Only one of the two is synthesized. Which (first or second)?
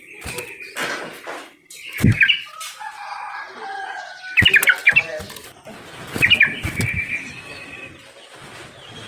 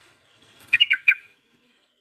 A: second